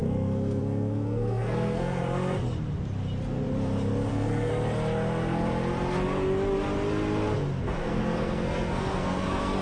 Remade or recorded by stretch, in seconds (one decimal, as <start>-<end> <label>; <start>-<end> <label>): 0.0-2.0 remade; 2.0-4.1 recorded; 4.1-4.5 remade; 4.5-7.6 recorded; 7.6-9.6 remade